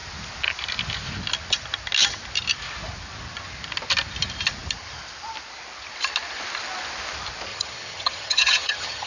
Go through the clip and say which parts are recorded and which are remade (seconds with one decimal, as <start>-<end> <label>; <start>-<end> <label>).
0.0-7.5 recorded; 7.5-9.1 remade